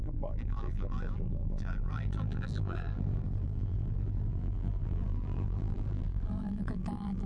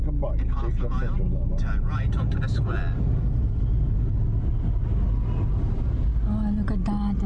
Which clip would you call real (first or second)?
second